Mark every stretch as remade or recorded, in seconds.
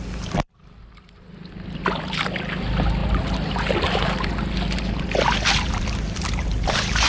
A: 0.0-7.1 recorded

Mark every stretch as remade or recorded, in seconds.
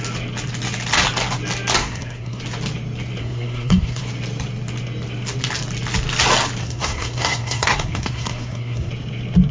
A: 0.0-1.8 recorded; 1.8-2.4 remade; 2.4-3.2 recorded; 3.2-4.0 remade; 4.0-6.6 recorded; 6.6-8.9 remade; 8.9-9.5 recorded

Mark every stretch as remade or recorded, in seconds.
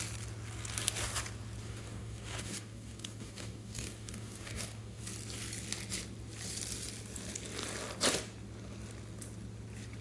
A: 0.0-1.6 recorded; 1.6-5.0 remade; 5.0-10.0 recorded